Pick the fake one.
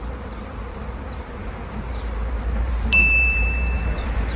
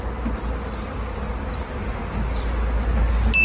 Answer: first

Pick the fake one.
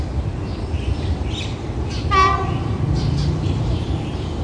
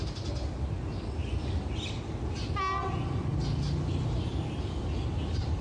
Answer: first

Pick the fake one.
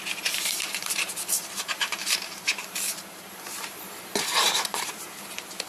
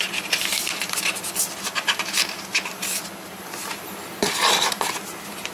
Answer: first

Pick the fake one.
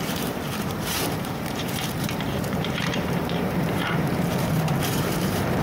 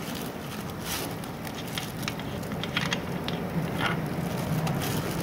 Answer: first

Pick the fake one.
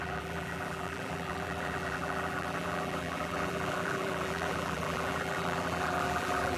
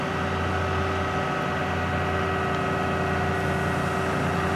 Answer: first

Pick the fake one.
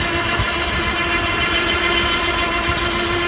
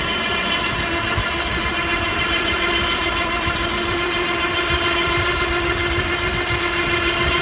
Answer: second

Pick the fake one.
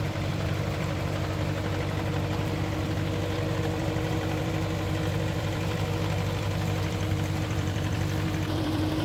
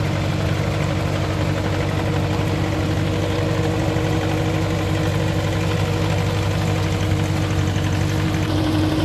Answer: first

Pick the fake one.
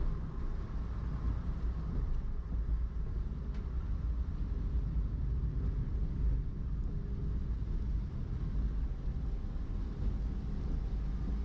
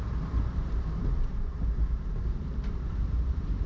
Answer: second